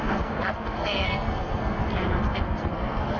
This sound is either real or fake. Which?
fake